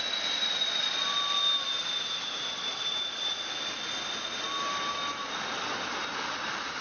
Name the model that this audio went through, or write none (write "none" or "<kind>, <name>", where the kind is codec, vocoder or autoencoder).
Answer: none